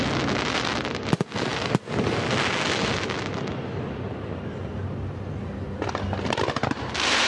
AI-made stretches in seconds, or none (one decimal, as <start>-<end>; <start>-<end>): none